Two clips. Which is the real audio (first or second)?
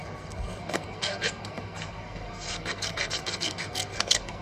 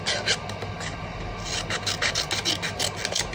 second